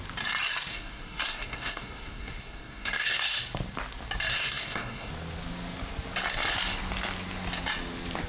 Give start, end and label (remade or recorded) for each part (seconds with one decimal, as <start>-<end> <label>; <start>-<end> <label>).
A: 0.0-0.7 recorded; 0.7-3.4 remade; 3.4-4.3 recorded; 4.3-5.1 remade; 5.1-8.3 recorded

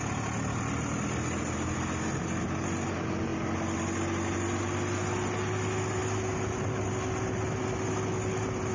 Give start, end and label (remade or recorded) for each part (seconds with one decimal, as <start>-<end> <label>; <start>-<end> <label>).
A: 0.0-8.7 recorded